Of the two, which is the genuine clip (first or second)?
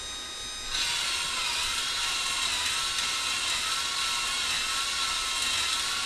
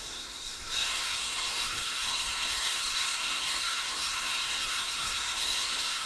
first